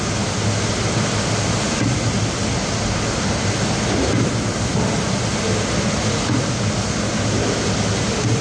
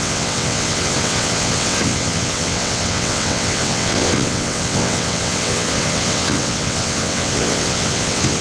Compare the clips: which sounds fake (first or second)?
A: second